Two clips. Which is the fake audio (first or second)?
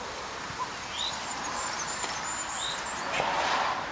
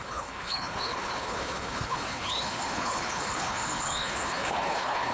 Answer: second